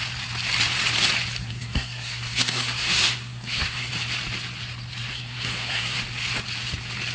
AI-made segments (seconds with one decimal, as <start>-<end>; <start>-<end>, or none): 1.4-3.9; 5.1-6.0